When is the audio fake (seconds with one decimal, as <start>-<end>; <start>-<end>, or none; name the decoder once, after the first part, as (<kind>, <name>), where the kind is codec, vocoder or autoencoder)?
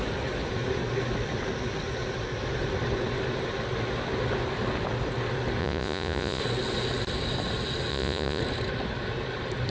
5.6-6.4 (vocoder, Vocos); 7.9-8.4